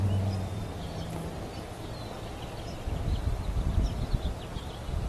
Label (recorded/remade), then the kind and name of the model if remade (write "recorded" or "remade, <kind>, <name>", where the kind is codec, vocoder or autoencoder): recorded